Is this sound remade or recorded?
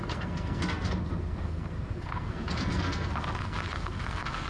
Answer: remade